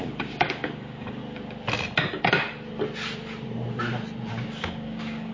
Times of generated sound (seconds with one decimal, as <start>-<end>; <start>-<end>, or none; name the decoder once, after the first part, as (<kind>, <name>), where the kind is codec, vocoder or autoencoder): 0.0-1.2 (codec, DAC); 4.3-5.3

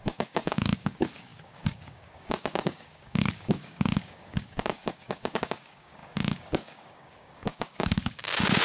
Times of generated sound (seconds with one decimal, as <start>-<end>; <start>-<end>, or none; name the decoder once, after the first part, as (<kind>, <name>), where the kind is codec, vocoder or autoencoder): 0.0-8.6 (codec, DAC)